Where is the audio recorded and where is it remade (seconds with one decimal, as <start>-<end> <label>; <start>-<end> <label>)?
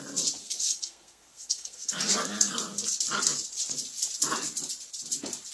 0.0-0.4 recorded; 0.4-2.0 remade; 2.0-5.5 recorded